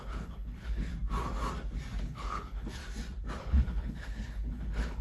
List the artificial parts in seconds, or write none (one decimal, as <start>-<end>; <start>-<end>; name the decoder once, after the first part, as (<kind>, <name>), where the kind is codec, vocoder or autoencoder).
0.0-0.9 (codec, HILCodec); 2.0-2.8; 3.4-5.0

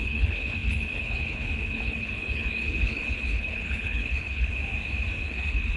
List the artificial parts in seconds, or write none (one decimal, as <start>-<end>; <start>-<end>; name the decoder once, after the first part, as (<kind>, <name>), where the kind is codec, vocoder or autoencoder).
0.0-4.5 (codec, HILCodec); 5.2-5.8

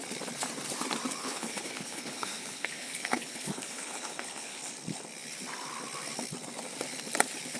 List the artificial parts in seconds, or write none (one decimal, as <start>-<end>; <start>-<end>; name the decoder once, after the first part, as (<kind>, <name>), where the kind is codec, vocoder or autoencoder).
1.2-4.6 (codec, HILCodec)

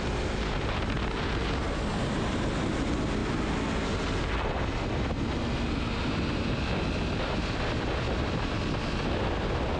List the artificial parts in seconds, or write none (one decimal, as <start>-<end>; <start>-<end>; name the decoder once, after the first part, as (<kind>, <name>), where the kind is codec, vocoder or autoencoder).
none

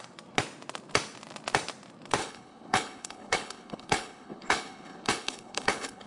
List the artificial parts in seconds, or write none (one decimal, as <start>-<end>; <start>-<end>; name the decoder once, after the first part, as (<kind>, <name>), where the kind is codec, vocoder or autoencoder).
2.2-6.1 (codec, HILCodec)

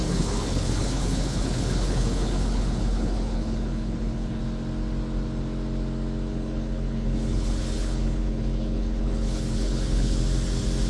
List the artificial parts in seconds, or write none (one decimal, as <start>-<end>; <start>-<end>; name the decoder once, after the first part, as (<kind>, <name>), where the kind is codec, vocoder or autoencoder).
0.0-4.4 (codec, HILCodec); 6.3-10.2

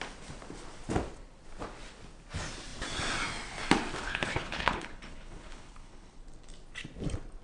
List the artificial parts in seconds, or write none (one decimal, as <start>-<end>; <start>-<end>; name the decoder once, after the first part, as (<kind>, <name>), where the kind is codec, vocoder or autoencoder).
4.0-6.2 (codec, HILCodec)

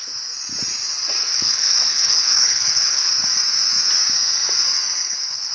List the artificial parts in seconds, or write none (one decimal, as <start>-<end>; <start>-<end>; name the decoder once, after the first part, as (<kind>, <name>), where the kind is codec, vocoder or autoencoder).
1.3-3.1 (codec, HILCodec); 5.0-5.5